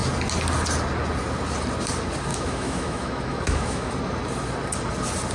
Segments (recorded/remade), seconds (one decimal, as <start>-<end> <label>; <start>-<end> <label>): 0.0-2.3 recorded; 2.3-3.9 remade; 3.9-5.3 recorded